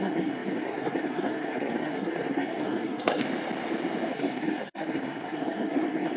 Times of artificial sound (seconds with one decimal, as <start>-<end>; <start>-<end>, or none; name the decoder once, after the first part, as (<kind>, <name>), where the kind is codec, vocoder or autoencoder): 0.0-3.2 (codec, SNAC); 4.1-6.2